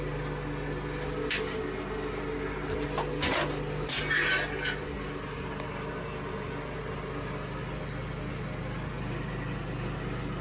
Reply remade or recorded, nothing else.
recorded